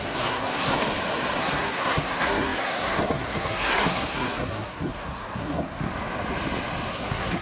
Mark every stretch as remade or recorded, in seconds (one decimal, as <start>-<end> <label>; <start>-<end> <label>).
0.0-0.7 remade; 0.7-1.4 recorded; 1.4-5.9 remade; 5.9-6.9 recorded; 6.9-7.4 remade